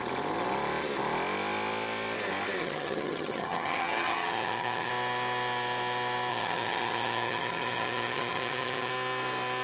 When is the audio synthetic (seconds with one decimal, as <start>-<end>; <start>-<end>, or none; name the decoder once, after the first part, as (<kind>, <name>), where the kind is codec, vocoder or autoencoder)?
2.6-4.9 (vocoder, HiFi-GAN); 6.3-8.9